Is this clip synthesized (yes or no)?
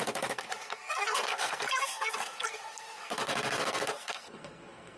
yes